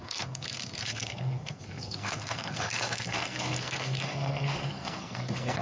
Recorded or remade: remade